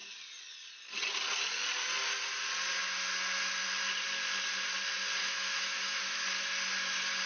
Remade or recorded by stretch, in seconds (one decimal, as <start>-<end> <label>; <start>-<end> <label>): 0.0-5.2 recorded; 5.2-6.2 remade; 6.2-7.3 recorded